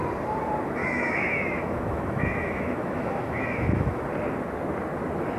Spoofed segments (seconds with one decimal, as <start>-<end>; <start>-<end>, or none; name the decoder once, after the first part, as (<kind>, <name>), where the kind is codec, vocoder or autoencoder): 0.8-4.0 (autoencoder, DAC-VAE)